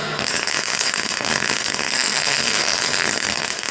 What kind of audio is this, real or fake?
fake